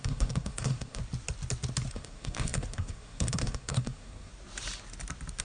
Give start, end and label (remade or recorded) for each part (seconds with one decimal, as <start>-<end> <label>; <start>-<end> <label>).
0.0-1.0 remade; 1.0-1.9 recorded; 1.9-4.3 remade; 4.3-5.4 recorded